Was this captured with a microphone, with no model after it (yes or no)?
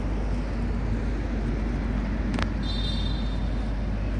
yes